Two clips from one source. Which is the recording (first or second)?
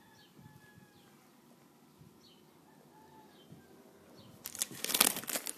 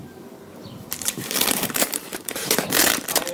first